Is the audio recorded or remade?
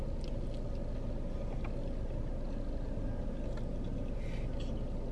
recorded